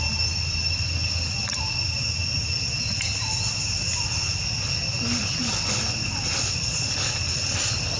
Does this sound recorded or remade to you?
recorded